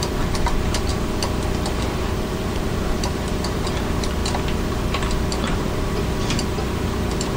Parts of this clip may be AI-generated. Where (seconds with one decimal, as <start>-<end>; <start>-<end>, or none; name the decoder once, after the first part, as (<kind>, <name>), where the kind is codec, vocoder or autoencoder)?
0.0-0.9 (vocoder, BigVGAN v2); 1.8-4.2; 5.2-7.4